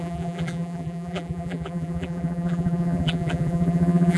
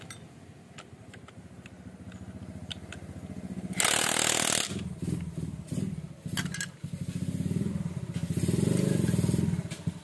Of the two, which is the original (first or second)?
second